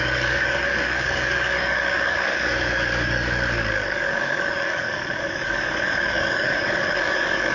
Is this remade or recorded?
remade